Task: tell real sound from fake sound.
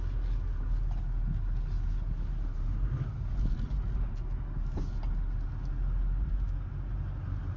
real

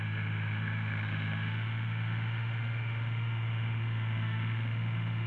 fake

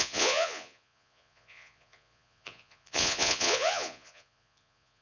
fake